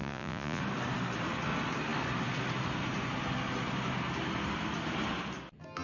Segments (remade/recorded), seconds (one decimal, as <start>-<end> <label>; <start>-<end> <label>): 0.0-0.6 remade; 0.6-5.8 recorded